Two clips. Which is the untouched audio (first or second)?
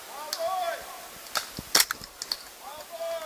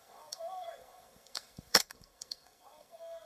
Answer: first